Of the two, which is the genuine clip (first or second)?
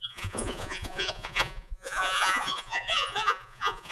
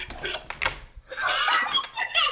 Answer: second